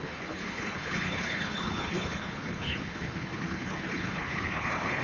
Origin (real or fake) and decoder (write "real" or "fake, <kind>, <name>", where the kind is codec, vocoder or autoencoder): fake, codec, HILCodec